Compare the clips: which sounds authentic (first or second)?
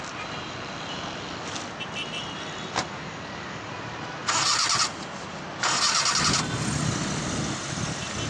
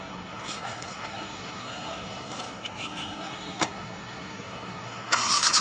first